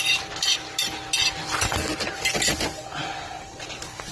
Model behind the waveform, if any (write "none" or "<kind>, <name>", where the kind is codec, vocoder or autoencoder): none